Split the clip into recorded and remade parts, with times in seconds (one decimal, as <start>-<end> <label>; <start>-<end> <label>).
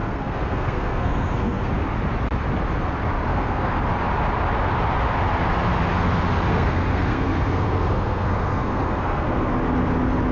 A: 0.0-1.7 remade; 1.7-3.3 recorded; 3.3-3.8 remade; 3.8-6.5 recorded; 6.5-9.5 remade; 9.5-10.3 recorded